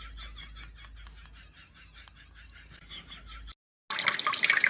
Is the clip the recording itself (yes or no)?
yes